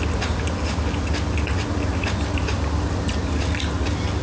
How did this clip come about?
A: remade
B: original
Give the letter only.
B